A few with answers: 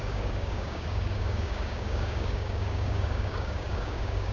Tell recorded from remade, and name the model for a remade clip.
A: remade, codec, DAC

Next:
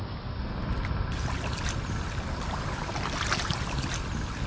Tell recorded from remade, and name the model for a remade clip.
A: recorded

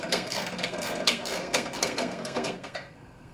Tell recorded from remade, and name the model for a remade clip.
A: remade, codec, SNAC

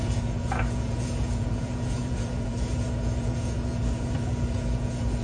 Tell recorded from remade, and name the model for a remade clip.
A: remade, vocoder, Vocos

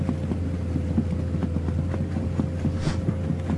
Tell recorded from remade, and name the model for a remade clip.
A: recorded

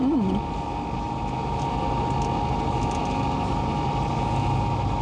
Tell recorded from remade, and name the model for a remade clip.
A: recorded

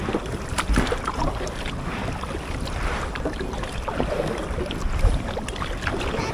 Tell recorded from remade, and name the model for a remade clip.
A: recorded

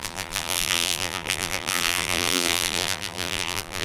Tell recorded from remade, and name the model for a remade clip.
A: remade, vocoder, BigVGAN v2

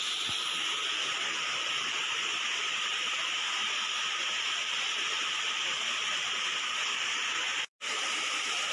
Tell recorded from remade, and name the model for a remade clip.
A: remade, vocoder, BigVGAN v2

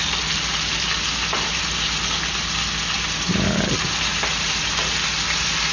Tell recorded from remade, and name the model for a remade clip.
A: recorded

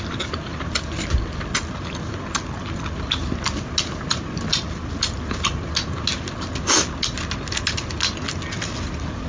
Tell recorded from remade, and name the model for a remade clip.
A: recorded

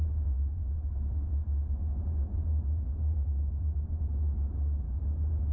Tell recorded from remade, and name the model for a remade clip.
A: remade, vocoder, BigVGAN v2